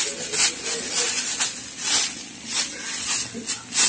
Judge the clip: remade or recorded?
recorded